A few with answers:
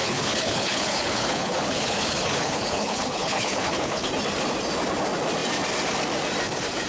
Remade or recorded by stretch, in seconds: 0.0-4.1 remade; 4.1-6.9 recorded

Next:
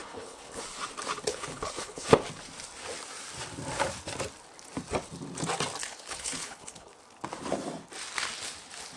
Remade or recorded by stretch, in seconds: 0.0-0.6 remade; 0.6-1.3 recorded; 1.3-2.2 remade; 2.2-5.8 recorded; 5.8-6.9 remade; 6.9-9.0 recorded

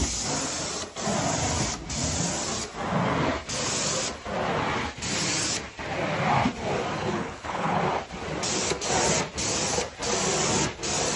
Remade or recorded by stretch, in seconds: 0.0-7.0 recorded; 7.0-7.8 remade; 7.8-11.2 recorded

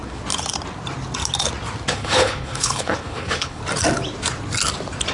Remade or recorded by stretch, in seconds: 0.0-1.9 recorded; 1.9-3.6 remade; 3.6-5.1 recorded

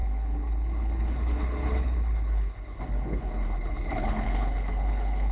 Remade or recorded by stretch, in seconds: 0.0-5.3 remade

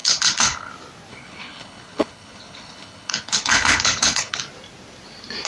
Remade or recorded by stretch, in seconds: 0.0-0.7 remade; 0.7-1.1 recorded; 1.1-4.4 remade; 4.4-5.5 recorded

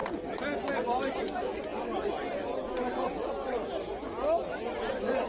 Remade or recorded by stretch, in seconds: 0.0-5.3 recorded